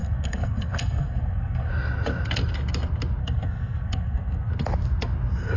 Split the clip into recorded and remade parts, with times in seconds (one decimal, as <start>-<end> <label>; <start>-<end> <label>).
0.0-1.7 remade; 1.7-3.2 recorded; 3.2-4.5 remade; 4.5-5.6 recorded